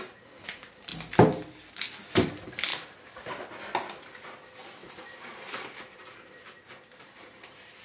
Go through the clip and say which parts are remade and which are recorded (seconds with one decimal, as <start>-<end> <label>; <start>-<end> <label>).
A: 0.0-0.9 remade; 0.9-2.0 recorded; 2.0-2.7 remade; 2.7-7.0 recorded; 7.0-7.8 remade